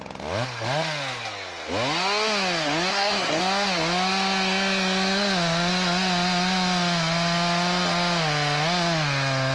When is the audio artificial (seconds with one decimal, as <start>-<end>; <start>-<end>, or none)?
2.9-3.4